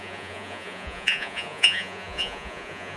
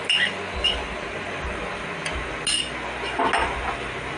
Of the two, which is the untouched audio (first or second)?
second